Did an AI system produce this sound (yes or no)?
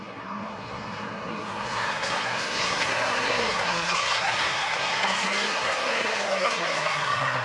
yes